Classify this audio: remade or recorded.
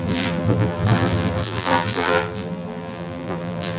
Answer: remade